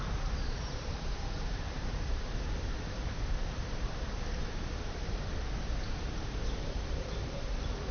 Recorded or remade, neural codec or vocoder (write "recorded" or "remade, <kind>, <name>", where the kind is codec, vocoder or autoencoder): remade, vocoder, BigVGAN v2